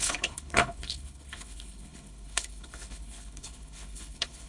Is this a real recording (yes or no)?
no